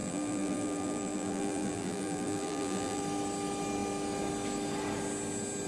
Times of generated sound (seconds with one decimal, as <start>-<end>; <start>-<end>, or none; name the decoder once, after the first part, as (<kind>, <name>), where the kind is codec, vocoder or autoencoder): 0.0-3.0 (vocoder, BigVGAN v2)